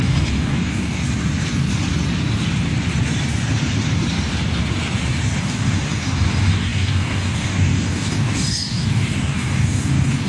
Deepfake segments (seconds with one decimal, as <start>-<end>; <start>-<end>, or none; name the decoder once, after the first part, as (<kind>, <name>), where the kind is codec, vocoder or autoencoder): 0.0-1.0 (codec, DAC); 5.4-10.3